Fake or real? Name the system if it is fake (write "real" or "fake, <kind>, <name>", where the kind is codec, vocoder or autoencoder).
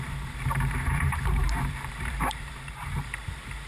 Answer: fake, vocoder, BigVGAN v2